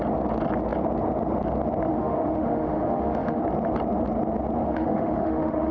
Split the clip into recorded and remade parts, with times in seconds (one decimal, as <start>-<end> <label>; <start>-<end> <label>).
0.0-1.9 recorded; 1.9-3.4 remade; 3.4-4.6 recorded; 4.6-5.7 remade